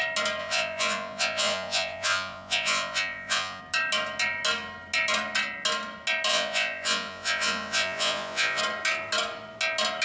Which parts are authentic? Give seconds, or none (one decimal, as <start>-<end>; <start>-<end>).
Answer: 0.0-0.4; 3.6-6.3; 8.6-10.0